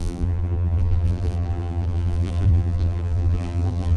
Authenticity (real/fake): fake